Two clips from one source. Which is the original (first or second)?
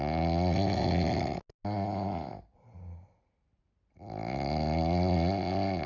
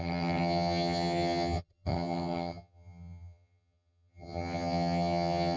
first